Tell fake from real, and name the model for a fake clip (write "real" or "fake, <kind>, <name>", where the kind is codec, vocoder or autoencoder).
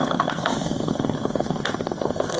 fake, codec, SNAC